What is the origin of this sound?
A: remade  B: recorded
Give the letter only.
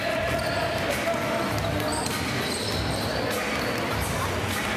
B